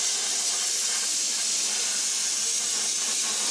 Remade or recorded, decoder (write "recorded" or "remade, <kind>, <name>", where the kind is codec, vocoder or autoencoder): recorded